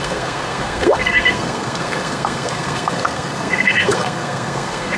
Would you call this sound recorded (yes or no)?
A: no